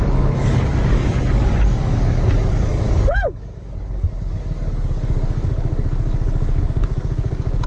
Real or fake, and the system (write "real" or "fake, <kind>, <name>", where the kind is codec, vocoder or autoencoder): fake, codec, DAC